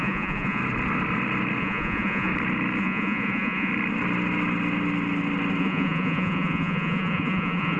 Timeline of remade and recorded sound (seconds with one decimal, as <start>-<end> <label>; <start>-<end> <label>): 0.0-0.6 remade; 0.6-1.6 recorded; 1.6-2.3 remade; 2.3-2.8 recorded; 2.8-3.7 remade; 3.7-5.6 recorded; 5.6-7.8 remade